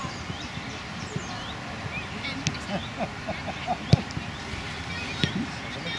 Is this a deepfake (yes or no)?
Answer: no